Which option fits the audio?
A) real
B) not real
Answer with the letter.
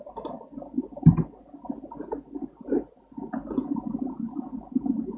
A